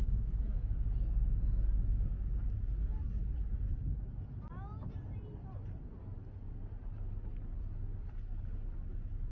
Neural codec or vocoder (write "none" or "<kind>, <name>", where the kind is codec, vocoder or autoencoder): none